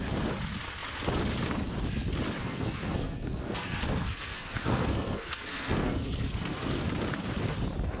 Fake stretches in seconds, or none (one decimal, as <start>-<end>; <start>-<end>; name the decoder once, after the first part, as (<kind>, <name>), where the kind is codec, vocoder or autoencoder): 2.4-6.9 (codec, SNAC)